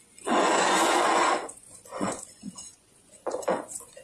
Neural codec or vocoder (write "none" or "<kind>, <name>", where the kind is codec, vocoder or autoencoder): vocoder, Vocos